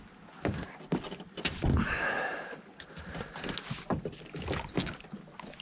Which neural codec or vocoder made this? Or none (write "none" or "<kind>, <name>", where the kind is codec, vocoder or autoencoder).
none